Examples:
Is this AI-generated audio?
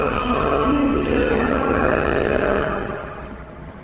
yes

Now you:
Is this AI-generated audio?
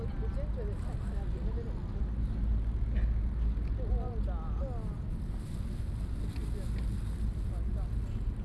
no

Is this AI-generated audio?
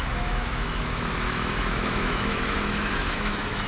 yes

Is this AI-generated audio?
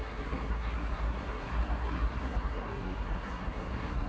yes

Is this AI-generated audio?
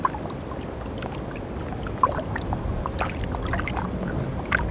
no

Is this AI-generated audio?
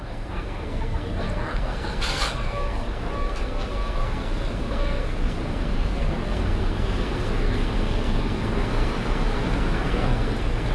yes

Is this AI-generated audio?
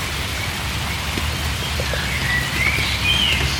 no